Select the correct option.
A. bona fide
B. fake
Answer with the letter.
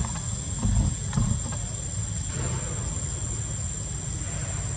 A